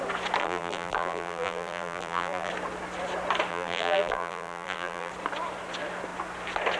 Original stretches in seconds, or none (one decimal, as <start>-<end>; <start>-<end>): 0.0-0.4; 2.5-3.5; 5.1-6.8